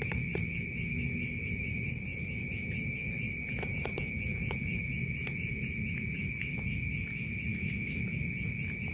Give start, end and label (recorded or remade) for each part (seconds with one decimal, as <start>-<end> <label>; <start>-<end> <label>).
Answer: 0.0-7.5 recorded; 7.5-8.0 remade; 8.0-8.9 recorded